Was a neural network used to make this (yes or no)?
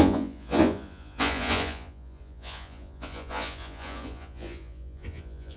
yes